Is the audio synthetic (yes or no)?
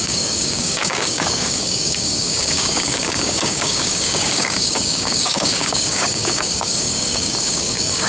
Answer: yes